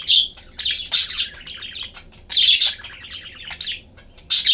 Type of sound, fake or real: real